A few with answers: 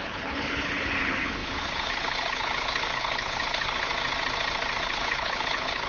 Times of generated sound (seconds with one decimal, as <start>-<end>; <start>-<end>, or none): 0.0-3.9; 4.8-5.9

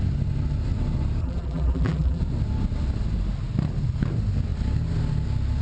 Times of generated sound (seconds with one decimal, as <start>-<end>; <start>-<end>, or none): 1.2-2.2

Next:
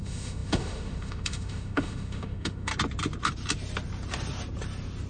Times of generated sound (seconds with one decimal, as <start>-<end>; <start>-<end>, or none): 0.0-2.7